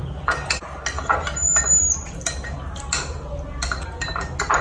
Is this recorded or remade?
recorded